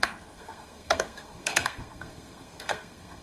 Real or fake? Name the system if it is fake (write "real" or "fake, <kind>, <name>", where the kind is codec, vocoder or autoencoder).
fake, codec, SNAC